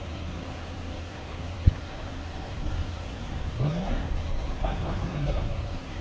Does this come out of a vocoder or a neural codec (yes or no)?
yes